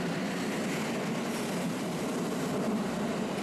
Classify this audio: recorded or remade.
recorded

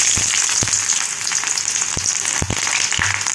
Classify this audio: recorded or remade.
recorded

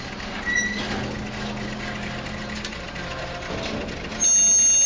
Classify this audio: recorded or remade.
recorded